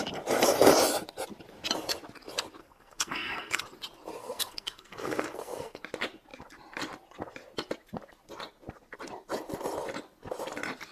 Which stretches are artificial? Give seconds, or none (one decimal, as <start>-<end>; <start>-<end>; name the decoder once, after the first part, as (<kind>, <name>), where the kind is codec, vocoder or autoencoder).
2.6-3.6 (codec, SNAC); 4.2-5.8